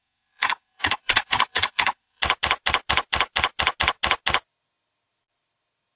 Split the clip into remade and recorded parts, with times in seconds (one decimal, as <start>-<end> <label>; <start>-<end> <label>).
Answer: 0.0-2.2 remade; 2.2-6.0 recorded